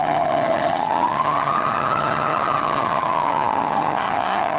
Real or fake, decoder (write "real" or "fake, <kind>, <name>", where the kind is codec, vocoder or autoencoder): fake, vocoder, HiFi-GAN